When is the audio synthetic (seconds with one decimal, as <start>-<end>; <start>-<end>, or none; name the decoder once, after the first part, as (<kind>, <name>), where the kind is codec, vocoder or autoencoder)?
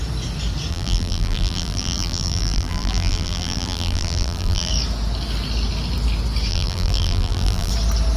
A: 0.7-4.7 (vocoder, BigVGAN v2); 6.5-7.7